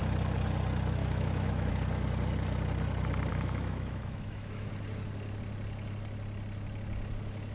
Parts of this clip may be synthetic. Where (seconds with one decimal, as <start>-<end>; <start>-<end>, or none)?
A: 1.0-1.7; 3.3-4.7